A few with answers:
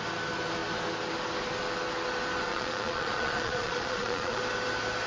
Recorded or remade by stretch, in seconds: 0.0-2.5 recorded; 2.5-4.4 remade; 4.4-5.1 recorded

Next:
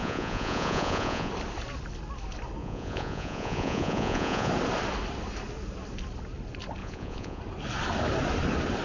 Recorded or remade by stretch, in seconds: 0.0-1.3 remade; 1.3-2.6 recorded; 2.6-4.5 remade; 4.5-6.8 recorded; 6.8-7.4 remade; 7.4-8.8 recorded

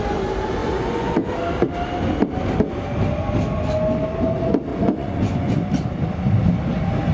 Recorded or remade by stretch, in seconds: 0.0-0.6 recorded; 0.6-1.3 remade; 1.3-4.7 recorded; 4.7-5.5 remade; 5.5-7.1 recorded

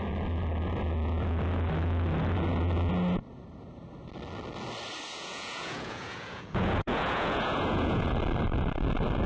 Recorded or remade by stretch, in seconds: 0.0-5.1 recorded; 5.1-8.1 remade; 8.1-9.3 recorded

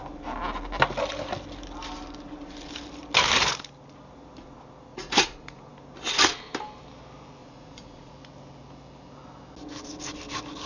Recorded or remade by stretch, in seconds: 0.0-4.9 recorded; 4.9-5.7 remade; 5.7-7.4 recorded; 7.4-8.1 remade; 8.1-10.7 recorded